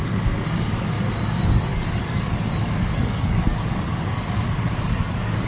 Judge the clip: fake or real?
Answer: fake